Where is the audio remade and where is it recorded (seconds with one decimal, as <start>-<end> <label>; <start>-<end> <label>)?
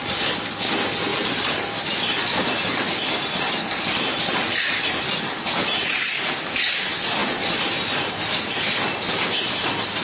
0.0-1.1 recorded; 1.1-4.7 remade; 4.7-7.2 recorded; 7.2-8.2 remade; 8.2-10.0 recorded